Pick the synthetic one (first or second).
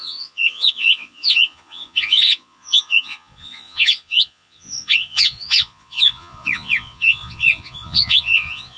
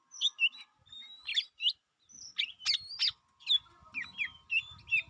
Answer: first